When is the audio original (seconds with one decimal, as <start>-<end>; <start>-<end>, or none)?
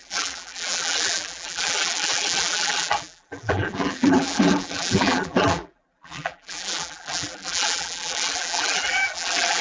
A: none